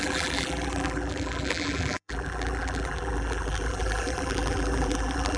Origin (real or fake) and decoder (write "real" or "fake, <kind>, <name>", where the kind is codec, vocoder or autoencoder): fake, vocoder, BigVGAN v2